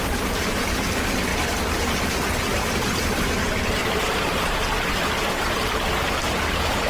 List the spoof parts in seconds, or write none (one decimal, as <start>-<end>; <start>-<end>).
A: 3.8-4.5